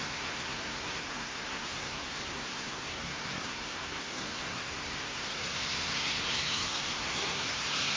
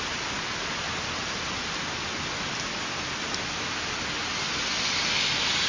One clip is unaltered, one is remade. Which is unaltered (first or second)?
second